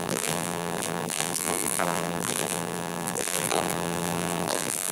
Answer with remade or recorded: remade